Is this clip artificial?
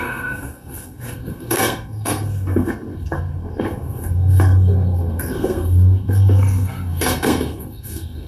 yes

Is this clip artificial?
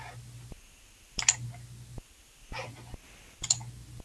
no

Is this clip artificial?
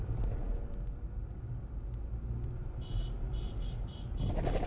no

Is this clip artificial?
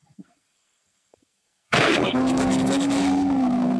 yes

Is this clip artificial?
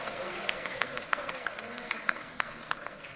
yes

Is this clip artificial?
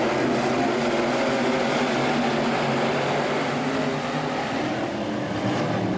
no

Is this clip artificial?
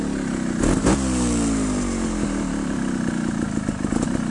no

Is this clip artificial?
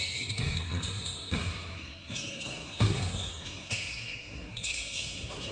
yes